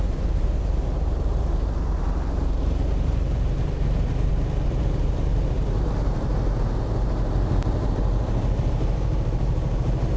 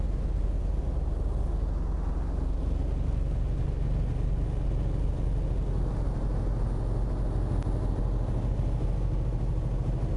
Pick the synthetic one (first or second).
first